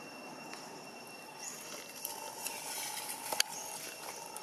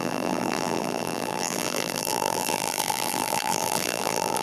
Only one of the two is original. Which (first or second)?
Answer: first